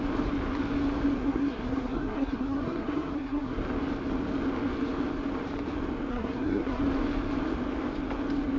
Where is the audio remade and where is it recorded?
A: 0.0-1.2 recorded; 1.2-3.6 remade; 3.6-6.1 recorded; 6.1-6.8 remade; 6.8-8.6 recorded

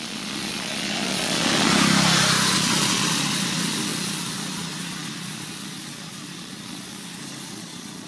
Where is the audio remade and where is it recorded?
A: 0.0-1.7 remade; 1.7-2.5 recorded; 2.5-8.1 remade

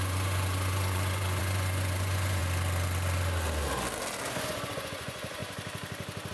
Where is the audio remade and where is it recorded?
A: 0.0-2.4 remade; 2.4-4.3 recorded; 4.3-5.4 remade; 5.4-6.3 recorded

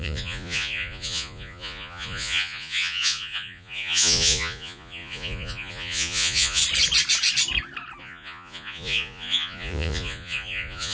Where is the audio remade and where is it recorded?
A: 0.0-6.6 remade; 6.6-8.0 recorded; 8.0-10.9 remade

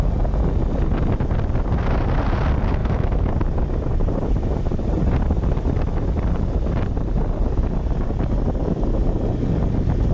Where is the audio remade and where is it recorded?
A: 0.0-2.8 recorded; 2.8-3.3 remade; 3.3-10.1 recorded